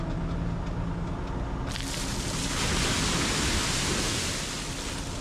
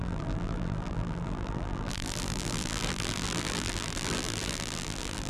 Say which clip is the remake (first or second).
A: second